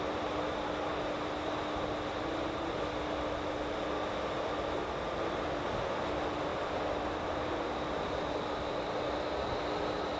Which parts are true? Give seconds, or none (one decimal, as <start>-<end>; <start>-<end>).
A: 0.0-10.2